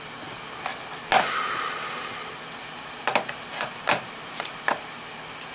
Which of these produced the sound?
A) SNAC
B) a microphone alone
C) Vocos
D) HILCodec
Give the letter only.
B